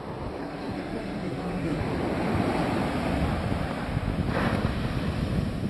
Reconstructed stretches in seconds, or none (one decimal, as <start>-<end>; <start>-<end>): 0.4-1.8